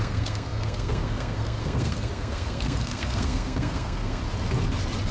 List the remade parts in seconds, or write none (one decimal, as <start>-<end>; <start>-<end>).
0.0-4.2